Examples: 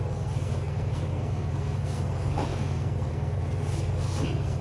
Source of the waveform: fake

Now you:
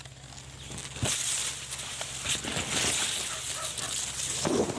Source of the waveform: real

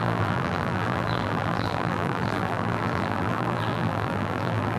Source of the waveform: fake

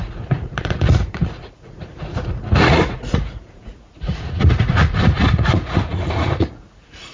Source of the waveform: fake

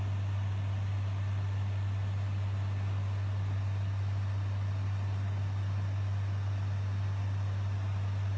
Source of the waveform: real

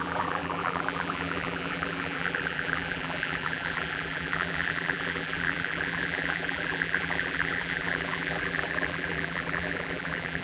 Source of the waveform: fake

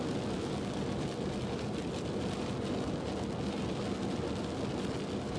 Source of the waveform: real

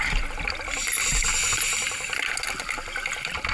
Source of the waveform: real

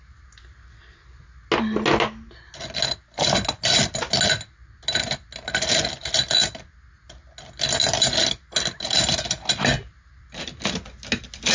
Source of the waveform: real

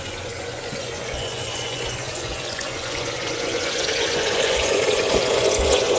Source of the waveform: fake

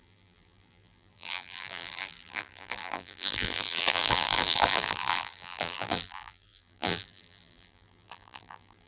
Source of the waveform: fake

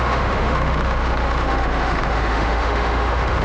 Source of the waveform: fake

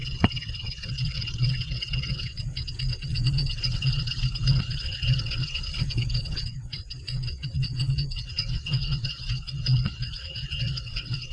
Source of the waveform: fake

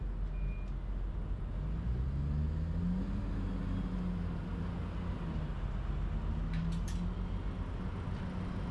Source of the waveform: real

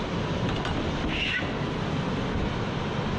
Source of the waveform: real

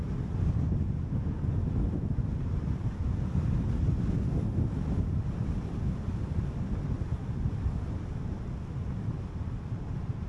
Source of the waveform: real